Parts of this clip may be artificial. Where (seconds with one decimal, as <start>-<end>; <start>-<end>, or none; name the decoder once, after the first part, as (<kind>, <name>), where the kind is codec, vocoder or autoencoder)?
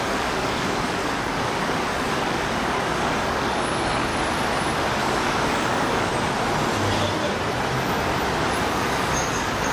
0.0-4.1 (codec, DAC); 5.0-6.1; 8.7-9.7